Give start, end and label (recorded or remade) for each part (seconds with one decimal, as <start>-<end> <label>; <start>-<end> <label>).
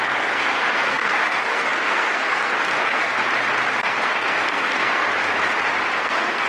0.0-3.2 remade; 3.2-3.8 recorded; 3.8-5.1 remade; 5.1-6.0 recorded; 6.0-6.5 remade